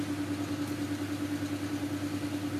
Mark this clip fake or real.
real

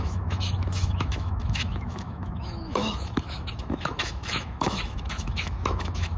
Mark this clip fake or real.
fake